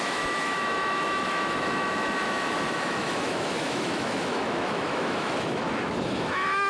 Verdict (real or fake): fake